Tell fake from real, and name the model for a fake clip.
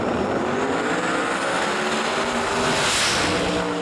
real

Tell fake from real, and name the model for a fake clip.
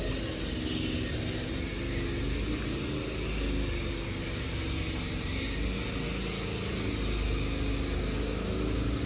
real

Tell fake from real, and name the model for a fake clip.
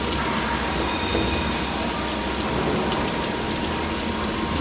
real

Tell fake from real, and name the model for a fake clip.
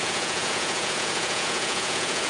fake, vocoder, Vocos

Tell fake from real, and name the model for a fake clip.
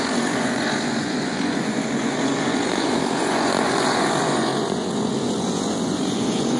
fake, vocoder, Vocos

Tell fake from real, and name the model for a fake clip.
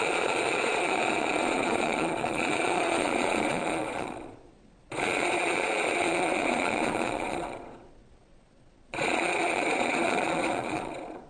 fake, vocoder, Vocos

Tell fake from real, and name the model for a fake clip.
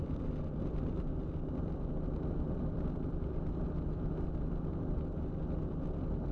fake, vocoder, BigVGAN v2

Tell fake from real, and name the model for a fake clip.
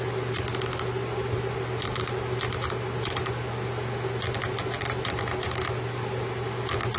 real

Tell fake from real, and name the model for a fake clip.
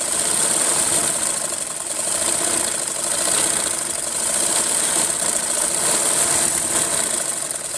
real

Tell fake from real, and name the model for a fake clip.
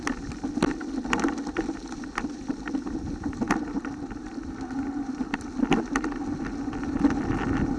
real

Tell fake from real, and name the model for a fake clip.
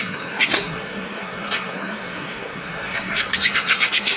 fake, codec, SNAC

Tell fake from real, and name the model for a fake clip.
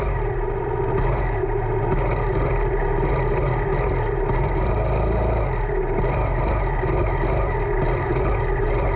real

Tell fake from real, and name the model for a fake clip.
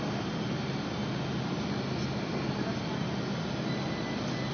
real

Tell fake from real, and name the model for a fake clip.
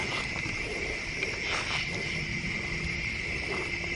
real